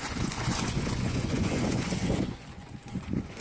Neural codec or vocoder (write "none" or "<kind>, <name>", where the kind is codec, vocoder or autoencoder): vocoder, Vocos